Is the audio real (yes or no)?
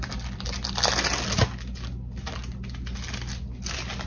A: yes